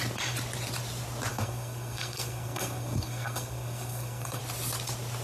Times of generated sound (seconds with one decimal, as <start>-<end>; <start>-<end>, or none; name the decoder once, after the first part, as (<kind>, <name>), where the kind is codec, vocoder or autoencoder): 1.3-4.4 (codec, SNAC)